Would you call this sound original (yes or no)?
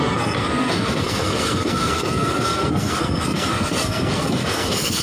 no